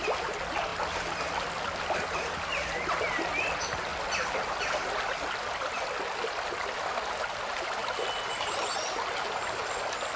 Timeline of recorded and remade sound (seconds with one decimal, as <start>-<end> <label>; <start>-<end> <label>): 0.0-10.2 recorded